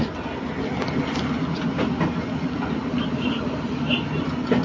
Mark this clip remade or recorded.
recorded